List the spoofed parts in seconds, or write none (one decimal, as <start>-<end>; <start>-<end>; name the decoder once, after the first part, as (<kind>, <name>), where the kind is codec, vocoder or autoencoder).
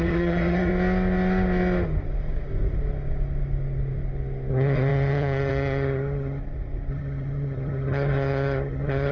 0.0-0.7 (vocoder, HiFi-GAN); 4.5-6.4; 6.9-9.1